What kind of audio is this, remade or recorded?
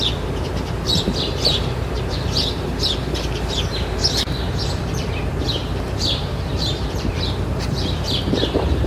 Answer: remade